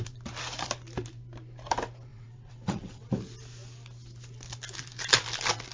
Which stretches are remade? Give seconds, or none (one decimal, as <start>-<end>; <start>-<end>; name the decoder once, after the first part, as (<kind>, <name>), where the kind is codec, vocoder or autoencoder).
2.1-3.1 (vocoder, WaveNeXt)